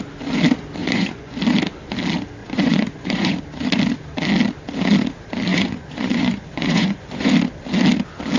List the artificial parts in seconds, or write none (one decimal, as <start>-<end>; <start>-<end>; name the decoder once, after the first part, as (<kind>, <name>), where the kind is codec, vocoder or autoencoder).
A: 0.8-1.4 (vocoder, Vocos); 2.4-3.4; 5.5-7.3

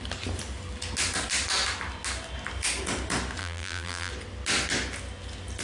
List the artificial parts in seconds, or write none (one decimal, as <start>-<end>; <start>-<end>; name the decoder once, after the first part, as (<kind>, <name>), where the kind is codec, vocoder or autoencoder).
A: 3.4-4.1 (vocoder, BigVGAN v2)

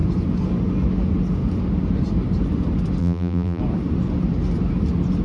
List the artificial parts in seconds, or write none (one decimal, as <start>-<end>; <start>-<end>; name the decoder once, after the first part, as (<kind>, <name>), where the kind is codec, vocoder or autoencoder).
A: 3.0-3.6 (vocoder, BigVGAN v2)

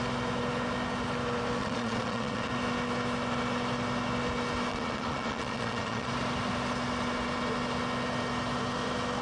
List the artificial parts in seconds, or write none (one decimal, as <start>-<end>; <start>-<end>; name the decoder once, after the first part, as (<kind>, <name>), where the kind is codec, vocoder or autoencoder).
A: 1.6-2.5 (vocoder, Vocos); 4.7-6.1

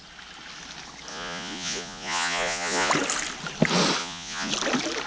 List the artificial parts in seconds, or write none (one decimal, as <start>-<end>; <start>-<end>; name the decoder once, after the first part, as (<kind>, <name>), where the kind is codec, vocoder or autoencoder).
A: 1.1-2.9 (vocoder, Vocos); 4.0-4.5

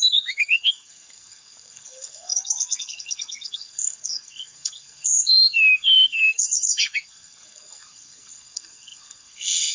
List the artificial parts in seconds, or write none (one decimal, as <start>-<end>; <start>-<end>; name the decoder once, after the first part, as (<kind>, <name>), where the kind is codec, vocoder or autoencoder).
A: 0.0-9.7 (codec, SNAC)

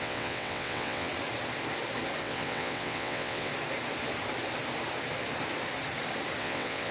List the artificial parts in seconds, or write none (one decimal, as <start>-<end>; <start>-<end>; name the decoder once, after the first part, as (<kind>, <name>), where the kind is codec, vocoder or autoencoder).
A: 0.0-1.1 (vocoder, WaveNeXt); 2.2-3.5; 6.4-6.9

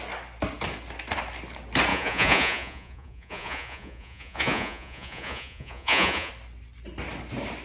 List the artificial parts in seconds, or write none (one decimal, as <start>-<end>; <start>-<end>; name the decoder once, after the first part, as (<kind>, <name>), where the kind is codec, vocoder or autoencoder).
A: 1.9-6.3 (vocoder, Vocos)